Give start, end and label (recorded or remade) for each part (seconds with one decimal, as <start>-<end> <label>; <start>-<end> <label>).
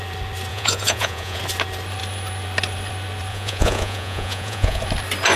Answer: 0.0-0.5 recorded; 0.5-1.4 remade; 1.4-3.3 recorded; 3.3-4.8 remade; 4.8-5.4 recorded